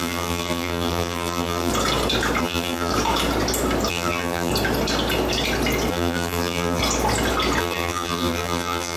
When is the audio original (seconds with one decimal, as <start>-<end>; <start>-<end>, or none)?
1.7-2.4; 2.9-3.9; 4.5-5.9; 6.8-7.6